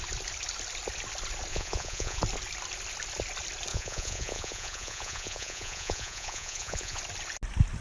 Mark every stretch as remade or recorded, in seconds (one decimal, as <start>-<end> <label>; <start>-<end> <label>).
0.0-1.5 recorded; 1.5-2.2 remade; 2.2-3.7 recorded; 3.7-7.0 remade; 7.0-7.8 recorded

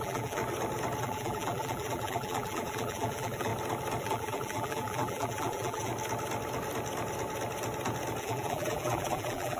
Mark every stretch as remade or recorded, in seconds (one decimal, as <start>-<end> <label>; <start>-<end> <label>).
0.0-0.4 remade; 0.4-1.0 recorded; 1.0-3.5 remade; 3.5-4.0 recorded; 4.0-5.9 remade; 5.9-8.2 recorded; 8.2-9.6 remade